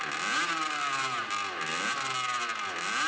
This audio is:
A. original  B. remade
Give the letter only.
A